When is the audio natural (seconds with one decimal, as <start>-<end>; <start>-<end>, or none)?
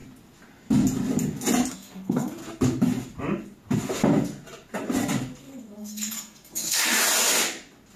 0.0-1.7; 2.4-5.4; 6.9-8.0